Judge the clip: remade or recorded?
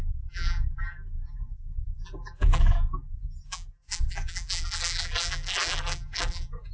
remade